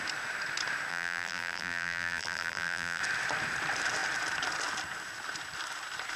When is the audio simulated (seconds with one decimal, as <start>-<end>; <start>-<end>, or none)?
0.9-3.0